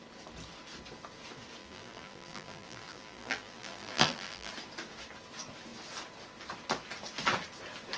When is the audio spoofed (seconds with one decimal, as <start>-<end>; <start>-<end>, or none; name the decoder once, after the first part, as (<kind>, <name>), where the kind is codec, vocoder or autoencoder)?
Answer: 1.6-4.5 (vocoder, BigVGAN v2)